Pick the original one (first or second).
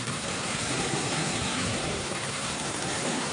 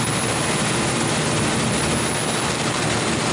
second